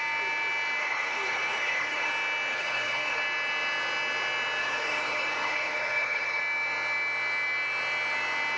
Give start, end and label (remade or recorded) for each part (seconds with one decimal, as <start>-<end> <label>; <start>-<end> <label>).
0.0-0.8 recorded; 0.8-2.1 remade; 2.1-2.5 recorded; 2.5-3.2 remade; 3.2-4.6 recorded; 4.6-6.4 remade; 6.4-8.6 recorded